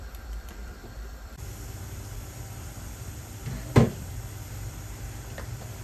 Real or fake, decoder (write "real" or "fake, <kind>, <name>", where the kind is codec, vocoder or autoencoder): fake, vocoder, BigVGAN v2